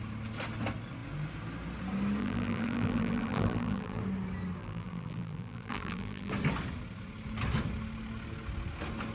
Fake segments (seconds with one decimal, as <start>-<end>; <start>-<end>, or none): 2.2-4.0; 4.6-6.3